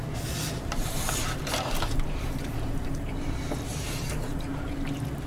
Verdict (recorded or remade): remade